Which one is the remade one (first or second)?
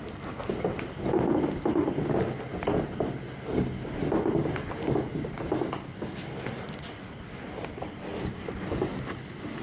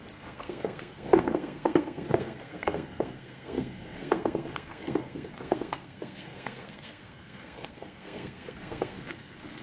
second